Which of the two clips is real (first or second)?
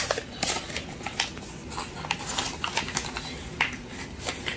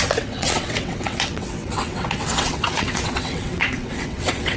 first